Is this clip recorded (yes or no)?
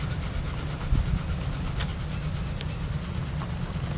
yes